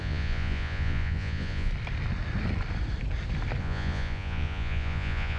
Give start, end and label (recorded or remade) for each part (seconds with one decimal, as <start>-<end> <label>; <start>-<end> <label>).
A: 0.0-1.7 remade; 1.7-3.6 recorded; 3.6-5.4 remade